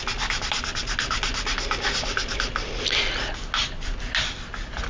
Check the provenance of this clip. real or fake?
real